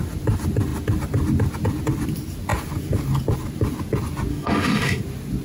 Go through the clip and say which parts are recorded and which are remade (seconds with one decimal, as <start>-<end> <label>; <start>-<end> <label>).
0.0-4.3 recorded; 4.3-5.0 remade; 5.0-5.4 recorded